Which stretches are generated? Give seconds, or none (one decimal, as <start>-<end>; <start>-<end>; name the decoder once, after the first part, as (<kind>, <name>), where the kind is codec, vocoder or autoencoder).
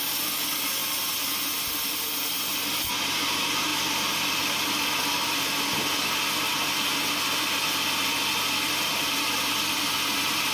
none